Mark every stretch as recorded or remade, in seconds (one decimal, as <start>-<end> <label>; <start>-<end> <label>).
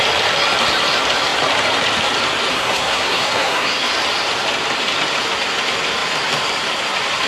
0.0-2.5 recorded; 2.5-3.9 remade; 3.9-7.3 recorded